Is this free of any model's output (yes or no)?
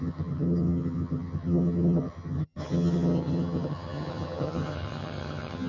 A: no